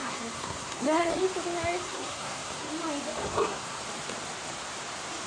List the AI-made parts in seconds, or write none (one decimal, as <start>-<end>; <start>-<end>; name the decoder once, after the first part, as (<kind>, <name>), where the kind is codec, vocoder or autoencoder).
0.0-1.2 (codec, SNAC); 1.8-2.7; 3.2-3.8